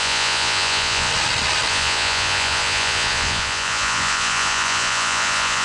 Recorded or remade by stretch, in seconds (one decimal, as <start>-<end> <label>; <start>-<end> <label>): 0.0-1.1 remade; 1.1-1.7 recorded; 1.7-5.6 remade